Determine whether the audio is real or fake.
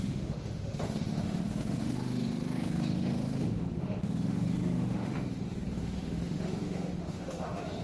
fake